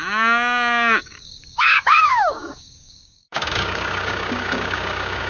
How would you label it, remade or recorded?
remade